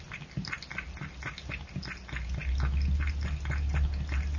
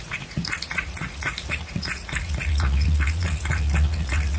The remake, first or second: second